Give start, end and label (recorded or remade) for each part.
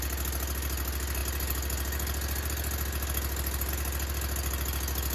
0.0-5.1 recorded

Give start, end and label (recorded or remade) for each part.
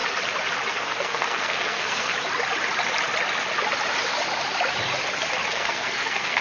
0.0-0.7 recorded; 0.7-2.1 remade; 2.1-5.5 recorded; 5.5-6.4 remade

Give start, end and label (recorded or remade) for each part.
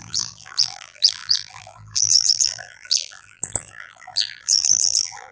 0.0-5.3 remade